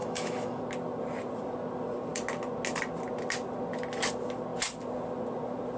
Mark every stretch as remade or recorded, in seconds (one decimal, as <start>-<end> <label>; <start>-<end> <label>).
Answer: 0.0-0.6 remade; 0.6-5.8 recorded

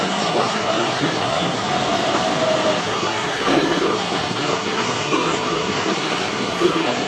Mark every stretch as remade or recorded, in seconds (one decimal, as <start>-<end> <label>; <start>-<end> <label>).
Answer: 0.0-1.7 remade; 1.7-2.8 recorded; 2.8-7.1 remade

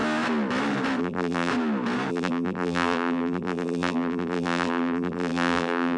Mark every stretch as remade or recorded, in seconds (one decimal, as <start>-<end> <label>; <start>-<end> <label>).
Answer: 0.0-1.0 recorded; 1.0-1.5 remade; 1.5-2.1 recorded; 2.1-6.0 remade